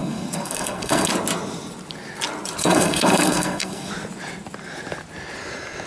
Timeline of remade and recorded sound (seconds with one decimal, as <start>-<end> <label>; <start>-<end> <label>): 0.0-1.1 remade; 1.1-2.6 recorded; 2.6-3.9 remade; 3.9-5.9 recorded